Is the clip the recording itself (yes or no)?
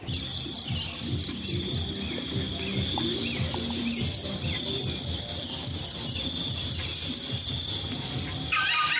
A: yes